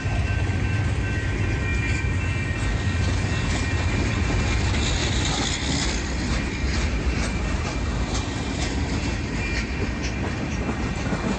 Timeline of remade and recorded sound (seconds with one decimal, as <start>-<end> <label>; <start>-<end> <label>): 0.0-5.0 recorded; 5.0-7.0 remade; 7.0-11.4 recorded